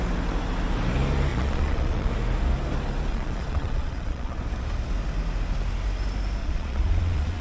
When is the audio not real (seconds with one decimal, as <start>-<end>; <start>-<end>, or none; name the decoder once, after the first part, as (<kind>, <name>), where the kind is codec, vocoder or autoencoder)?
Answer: 1.3-2.1 (vocoder, Vocos); 3.1-4.4; 6.4-7.4